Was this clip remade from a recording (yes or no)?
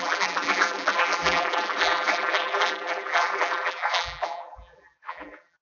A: yes